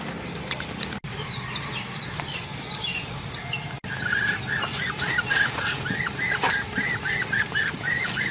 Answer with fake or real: real